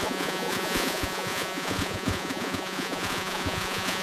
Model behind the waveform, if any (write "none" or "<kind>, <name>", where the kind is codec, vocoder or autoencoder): vocoder, Vocos